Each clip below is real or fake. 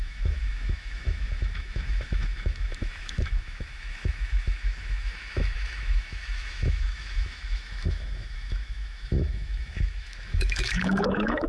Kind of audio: fake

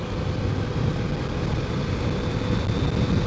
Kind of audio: real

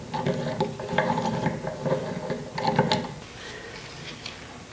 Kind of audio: real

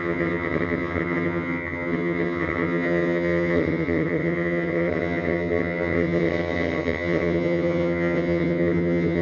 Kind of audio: fake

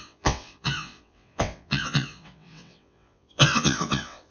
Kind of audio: fake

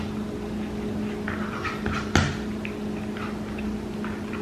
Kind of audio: real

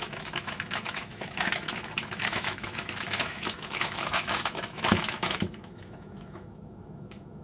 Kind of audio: fake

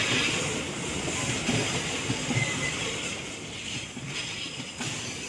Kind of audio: real